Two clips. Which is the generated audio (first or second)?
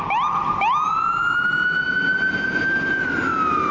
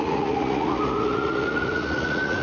second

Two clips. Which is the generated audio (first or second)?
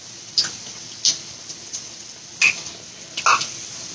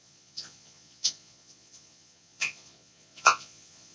second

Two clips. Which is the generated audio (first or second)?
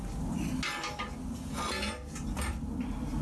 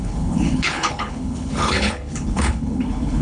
second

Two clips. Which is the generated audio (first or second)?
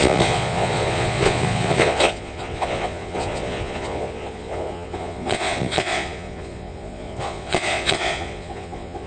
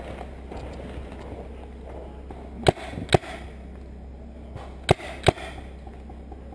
first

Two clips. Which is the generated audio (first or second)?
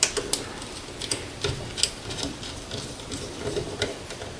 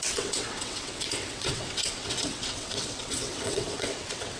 second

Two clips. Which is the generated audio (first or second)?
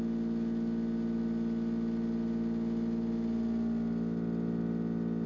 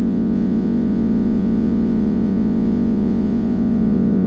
second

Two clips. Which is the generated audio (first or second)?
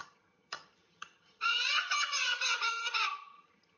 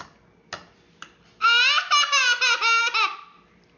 first